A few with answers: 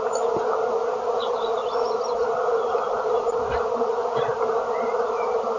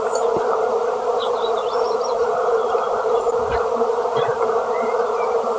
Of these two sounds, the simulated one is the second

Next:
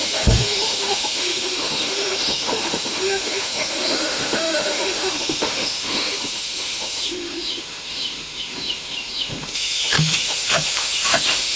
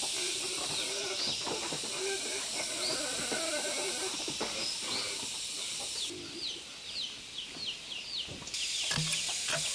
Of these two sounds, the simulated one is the first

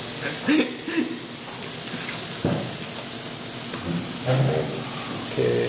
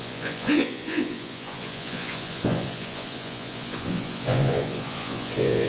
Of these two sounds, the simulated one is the second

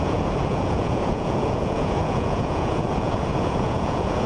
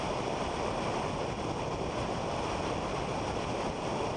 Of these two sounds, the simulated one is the first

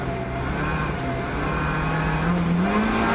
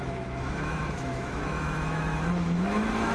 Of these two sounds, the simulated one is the second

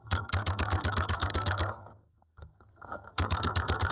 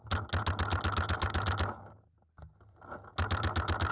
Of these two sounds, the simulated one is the first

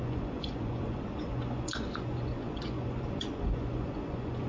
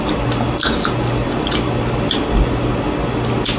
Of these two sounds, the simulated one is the first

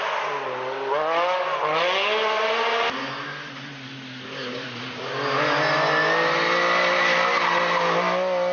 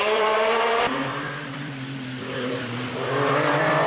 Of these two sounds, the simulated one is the second